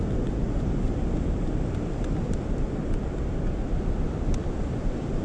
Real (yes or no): yes